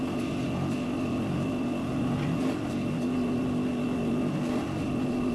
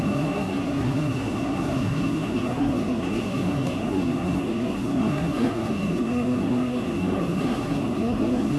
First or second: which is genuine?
first